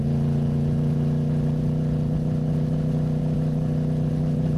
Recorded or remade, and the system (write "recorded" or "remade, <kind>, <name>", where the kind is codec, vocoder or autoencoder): recorded